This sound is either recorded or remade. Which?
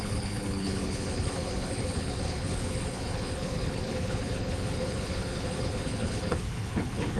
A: remade